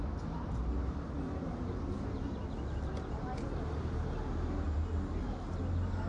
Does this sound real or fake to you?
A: real